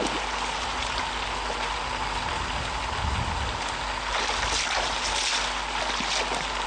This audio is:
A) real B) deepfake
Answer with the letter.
A